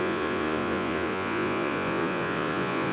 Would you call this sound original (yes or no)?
no